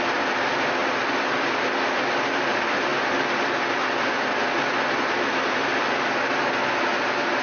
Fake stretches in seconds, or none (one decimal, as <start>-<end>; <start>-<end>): none